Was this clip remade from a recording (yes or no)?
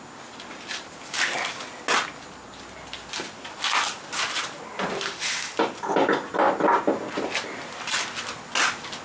no